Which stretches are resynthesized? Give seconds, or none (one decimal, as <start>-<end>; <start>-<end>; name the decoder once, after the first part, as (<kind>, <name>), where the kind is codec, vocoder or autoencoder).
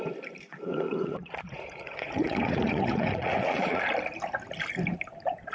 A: 0.5-3.8 (vocoder, Vocos)